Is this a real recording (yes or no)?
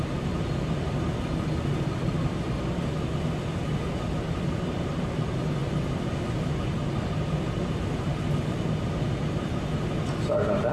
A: yes